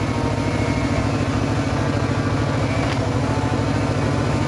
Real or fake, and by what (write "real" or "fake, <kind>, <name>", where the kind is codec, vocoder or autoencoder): real